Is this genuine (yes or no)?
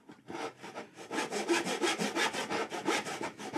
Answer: yes